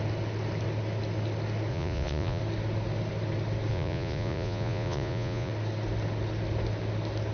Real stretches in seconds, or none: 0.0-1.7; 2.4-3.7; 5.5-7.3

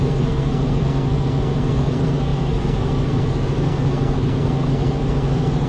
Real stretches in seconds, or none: none

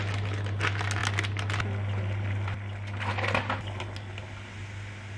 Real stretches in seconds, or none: 0.0-5.2

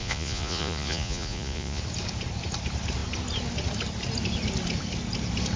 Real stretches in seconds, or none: 1.8-5.6

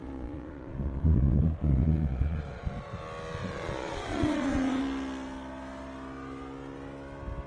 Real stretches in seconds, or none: 3.0-3.4; 4.8-7.5

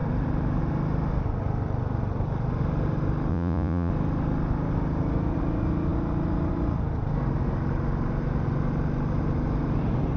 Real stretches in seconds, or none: 0.0-3.3; 3.9-10.2